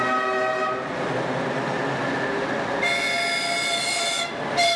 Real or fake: real